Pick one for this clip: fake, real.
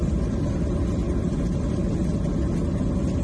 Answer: real